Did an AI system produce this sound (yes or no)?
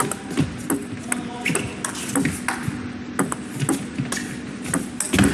no